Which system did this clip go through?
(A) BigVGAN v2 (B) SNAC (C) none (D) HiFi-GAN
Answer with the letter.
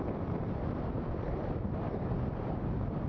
C